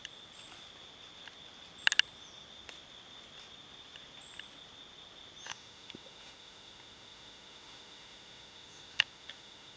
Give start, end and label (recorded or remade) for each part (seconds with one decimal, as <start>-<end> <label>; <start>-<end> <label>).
0.0-5.5 recorded; 5.5-9.8 remade

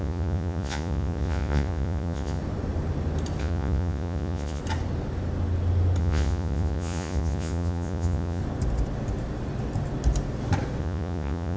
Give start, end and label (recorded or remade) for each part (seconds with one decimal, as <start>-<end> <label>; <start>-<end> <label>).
0.0-2.4 remade; 2.4-3.4 recorded; 3.4-4.6 remade; 4.6-6.0 recorded; 6.0-8.4 remade; 8.4-10.8 recorded; 10.8-11.6 remade

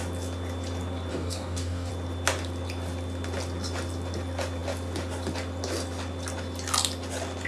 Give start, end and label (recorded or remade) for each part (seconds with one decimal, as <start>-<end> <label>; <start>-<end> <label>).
0.0-1.1 recorded; 1.1-1.9 remade; 1.9-7.5 recorded

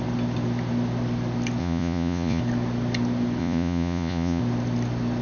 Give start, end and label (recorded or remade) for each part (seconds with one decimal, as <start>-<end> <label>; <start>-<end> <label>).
0.0-1.6 recorded; 1.6-2.4 remade; 2.4-3.4 recorded; 3.4-4.4 remade; 4.4-5.2 recorded

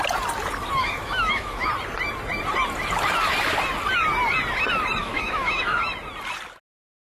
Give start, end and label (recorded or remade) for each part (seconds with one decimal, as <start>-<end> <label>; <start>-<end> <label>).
0.0-0.8 recorded; 0.8-1.7 remade; 1.7-5.0 recorded; 5.0-5.8 remade; 5.8-7.1 recorded

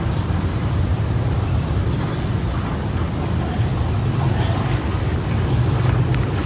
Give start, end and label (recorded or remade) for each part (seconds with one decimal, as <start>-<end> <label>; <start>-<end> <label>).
0.0-6.5 recorded